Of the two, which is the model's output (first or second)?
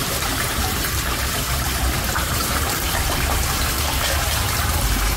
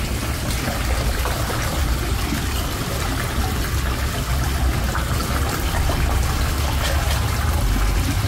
first